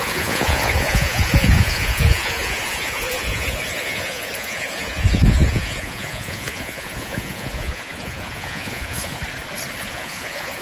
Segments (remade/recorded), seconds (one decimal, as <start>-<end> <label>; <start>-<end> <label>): 0.0-9.2 remade; 9.2-9.8 recorded; 9.8-10.6 remade